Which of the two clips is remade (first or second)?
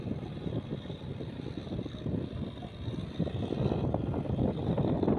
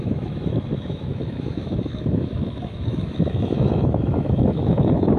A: second